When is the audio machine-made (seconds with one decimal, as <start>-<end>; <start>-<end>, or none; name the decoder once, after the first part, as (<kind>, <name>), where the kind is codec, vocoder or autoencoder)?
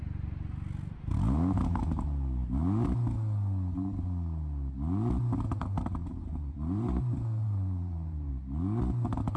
6.0-8.3 (vocoder, BigVGAN v2)